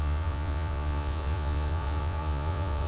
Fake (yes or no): yes